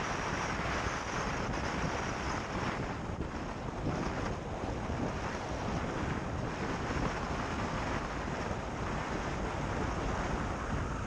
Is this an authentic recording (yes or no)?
yes